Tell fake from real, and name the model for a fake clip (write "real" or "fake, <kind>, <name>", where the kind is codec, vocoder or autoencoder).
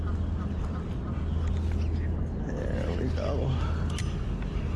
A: real